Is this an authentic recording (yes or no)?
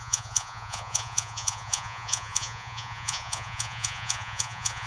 no